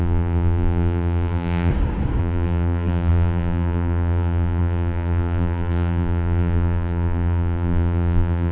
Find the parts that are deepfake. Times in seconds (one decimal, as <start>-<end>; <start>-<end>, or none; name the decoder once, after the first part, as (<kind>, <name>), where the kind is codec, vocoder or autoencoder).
0.0-1.7 (vocoder, BigVGAN v2); 2.2-8.5